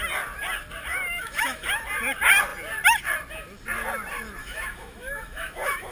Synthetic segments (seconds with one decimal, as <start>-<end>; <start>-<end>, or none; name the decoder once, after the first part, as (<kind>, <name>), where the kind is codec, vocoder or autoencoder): 0.9-1.8 (autoencoder, DAC-VAE); 4.4-5.9